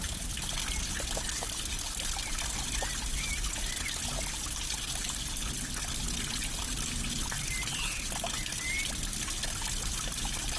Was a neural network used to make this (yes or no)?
no